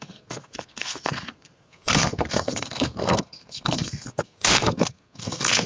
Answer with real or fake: fake